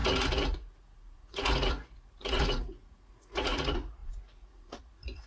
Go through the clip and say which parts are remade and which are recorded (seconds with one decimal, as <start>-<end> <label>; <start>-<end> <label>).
0.0-5.3 remade

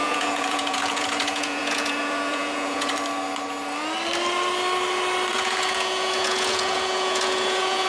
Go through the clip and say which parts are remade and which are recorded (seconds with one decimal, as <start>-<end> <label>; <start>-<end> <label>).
0.0-2.9 remade; 2.9-5.3 recorded; 5.3-7.9 remade

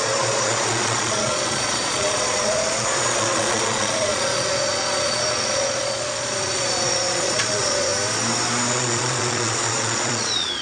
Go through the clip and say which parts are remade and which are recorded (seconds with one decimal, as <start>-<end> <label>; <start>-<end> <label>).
0.0-7.9 remade; 7.9-8.7 recorded; 8.7-10.6 remade